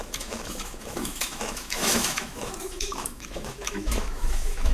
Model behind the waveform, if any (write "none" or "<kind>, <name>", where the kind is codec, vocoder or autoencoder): autoencoder, DAC-VAE